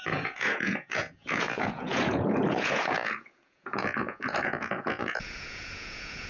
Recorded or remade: remade